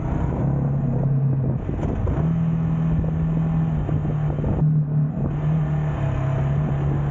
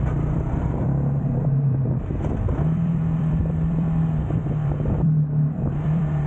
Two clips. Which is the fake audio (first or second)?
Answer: second